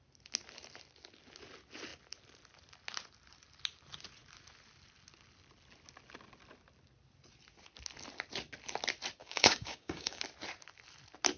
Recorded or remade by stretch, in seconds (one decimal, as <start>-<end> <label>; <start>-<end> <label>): 0.0-9.2 recorded; 9.2-10.2 remade; 10.2-11.4 recorded